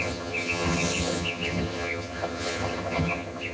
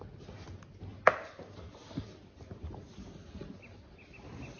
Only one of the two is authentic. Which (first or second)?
second